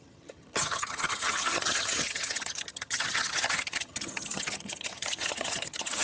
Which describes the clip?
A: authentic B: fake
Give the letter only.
B